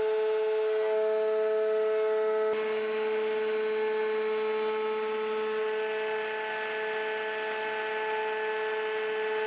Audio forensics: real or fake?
real